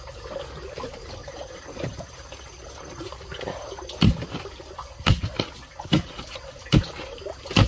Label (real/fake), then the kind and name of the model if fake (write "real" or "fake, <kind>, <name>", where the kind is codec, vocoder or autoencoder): real